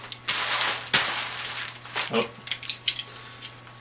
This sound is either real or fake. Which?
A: real